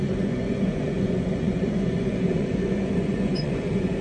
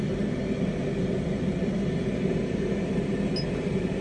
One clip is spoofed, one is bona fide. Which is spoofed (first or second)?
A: first